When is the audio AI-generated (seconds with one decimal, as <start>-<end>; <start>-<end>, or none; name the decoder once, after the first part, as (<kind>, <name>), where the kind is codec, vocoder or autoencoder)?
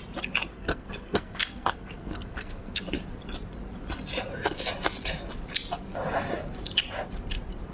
0.5-2.8 (codec, SNAC)